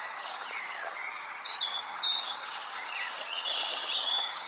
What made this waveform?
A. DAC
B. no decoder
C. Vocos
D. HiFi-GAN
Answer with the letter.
D